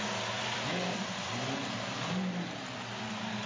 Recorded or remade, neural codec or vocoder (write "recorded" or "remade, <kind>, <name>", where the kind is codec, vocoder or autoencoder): recorded